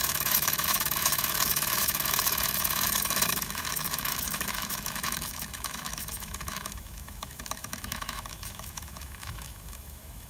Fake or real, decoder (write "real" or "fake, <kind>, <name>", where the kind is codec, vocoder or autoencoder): fake, autoencoder, DAC-VAE